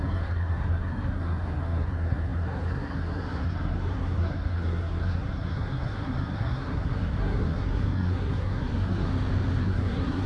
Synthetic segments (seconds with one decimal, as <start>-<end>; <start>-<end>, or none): 0.0-9.1; 9.6-10.3